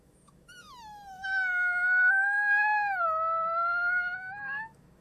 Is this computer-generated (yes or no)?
yes